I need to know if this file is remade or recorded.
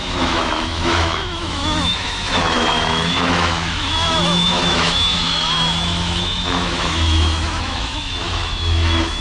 remade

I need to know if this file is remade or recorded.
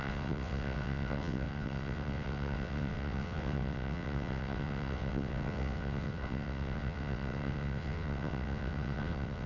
remade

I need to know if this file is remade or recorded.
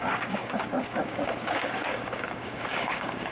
remade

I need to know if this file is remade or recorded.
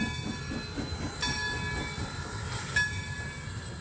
recorded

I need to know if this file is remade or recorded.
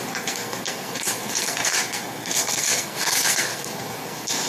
remade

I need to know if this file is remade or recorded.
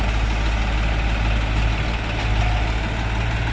recorded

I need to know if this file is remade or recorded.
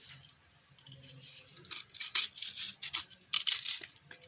recorded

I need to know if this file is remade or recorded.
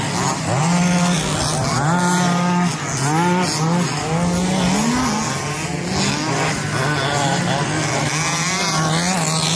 recorded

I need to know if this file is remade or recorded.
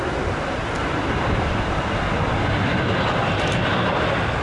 recorded